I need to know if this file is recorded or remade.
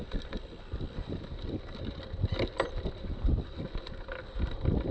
recorded